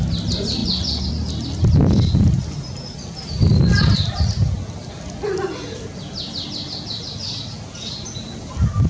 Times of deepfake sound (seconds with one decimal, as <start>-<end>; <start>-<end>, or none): none